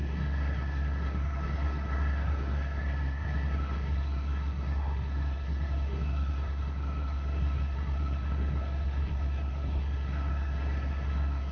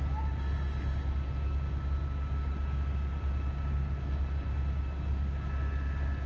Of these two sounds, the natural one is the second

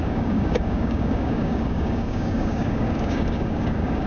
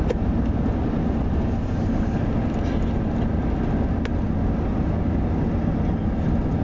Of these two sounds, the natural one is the second